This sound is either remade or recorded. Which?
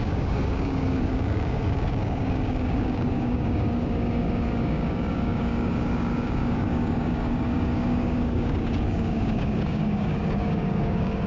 remade